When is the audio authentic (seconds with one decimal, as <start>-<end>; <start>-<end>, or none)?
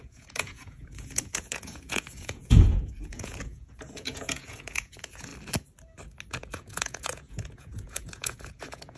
5.3-6.3